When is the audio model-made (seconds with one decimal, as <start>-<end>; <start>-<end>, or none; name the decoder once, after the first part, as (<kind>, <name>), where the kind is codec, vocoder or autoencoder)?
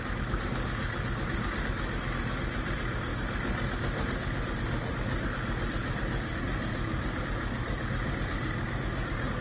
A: none